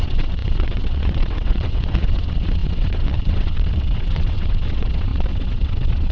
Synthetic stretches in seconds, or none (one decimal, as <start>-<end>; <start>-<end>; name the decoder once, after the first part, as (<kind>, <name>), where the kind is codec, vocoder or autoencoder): 0.0-6.1 (vocoder, WaveNeXt)